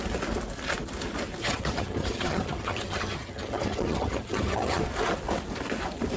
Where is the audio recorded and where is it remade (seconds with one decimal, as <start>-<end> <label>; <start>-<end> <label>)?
0.0-1.4 recorded; 1.4-4.8 remade; 4.8-6.2 recorded